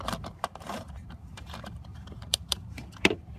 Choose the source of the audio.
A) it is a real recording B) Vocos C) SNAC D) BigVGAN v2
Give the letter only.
D